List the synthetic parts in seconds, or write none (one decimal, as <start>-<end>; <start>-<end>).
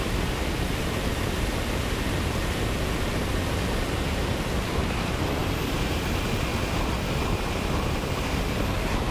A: 0.0-1.1; 5.0-6.5; 7.3-9.1